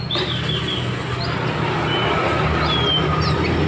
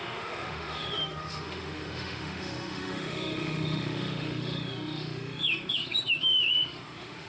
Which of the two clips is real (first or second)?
first